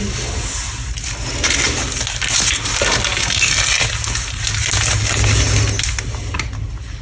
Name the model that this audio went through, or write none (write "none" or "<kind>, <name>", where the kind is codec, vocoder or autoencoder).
none